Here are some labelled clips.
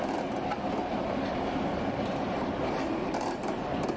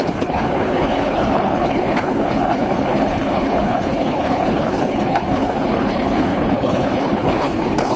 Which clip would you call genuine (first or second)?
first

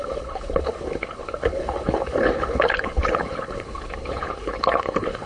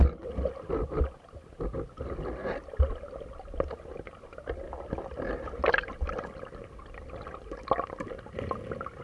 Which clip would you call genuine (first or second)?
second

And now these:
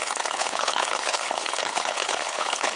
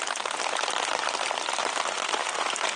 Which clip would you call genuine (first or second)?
second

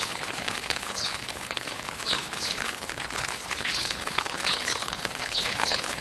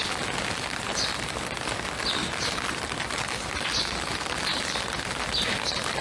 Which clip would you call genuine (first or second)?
second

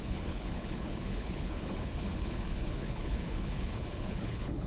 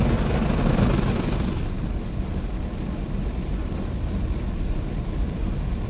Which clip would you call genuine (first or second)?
second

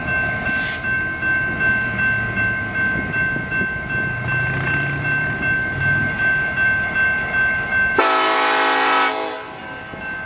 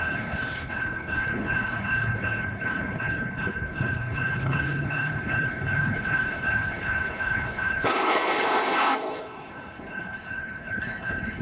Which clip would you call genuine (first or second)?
first